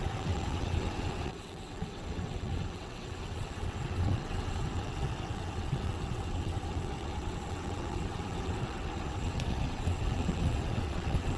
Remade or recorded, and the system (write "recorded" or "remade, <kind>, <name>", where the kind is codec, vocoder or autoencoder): remade, vocoder, WaveNeXt